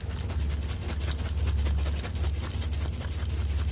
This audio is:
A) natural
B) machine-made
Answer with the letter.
A